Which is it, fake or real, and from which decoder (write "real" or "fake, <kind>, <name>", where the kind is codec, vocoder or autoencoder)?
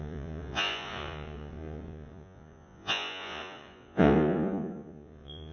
fake, vocoder, Vocos